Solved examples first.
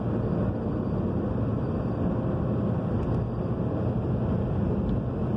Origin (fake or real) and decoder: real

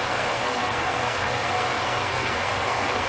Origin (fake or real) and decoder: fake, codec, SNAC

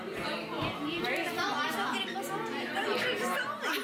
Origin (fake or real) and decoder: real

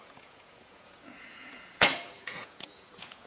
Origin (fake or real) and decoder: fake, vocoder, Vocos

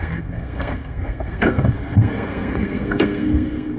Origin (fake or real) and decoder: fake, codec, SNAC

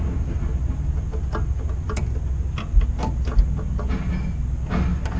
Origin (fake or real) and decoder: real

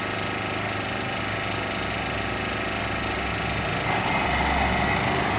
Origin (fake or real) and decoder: real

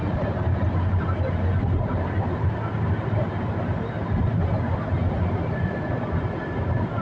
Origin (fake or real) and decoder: real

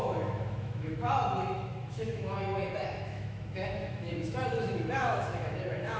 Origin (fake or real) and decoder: fake, autoencoder, DAC-VAE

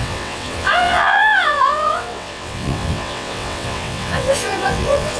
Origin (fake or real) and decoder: fake, vocoder, WaveNeXt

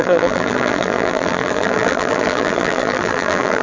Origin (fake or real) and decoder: fake, vocoder, BigVGAN v2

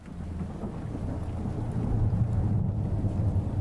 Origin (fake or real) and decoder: real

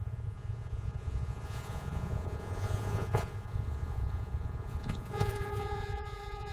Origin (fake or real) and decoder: fake, vocoder, Vocos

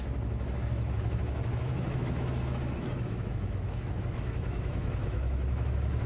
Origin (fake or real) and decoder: fake, autoencoder, DAC-VAE